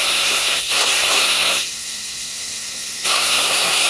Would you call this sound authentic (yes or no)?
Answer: no